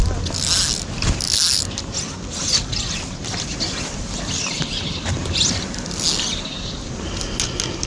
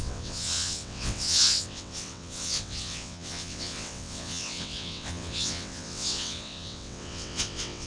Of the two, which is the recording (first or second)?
first